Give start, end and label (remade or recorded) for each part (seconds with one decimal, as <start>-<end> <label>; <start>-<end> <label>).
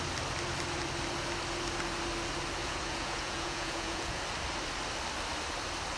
0.0-2.6 recorded; 2.6-4.2 remade; 4.2-6.0 recorded